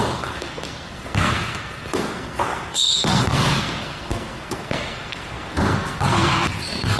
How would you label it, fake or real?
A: fake